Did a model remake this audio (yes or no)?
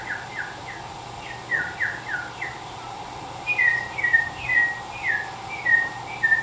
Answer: no